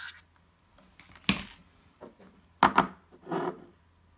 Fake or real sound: real